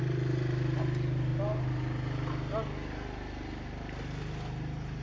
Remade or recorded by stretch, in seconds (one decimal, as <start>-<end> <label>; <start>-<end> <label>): 0.0-5.0 recorded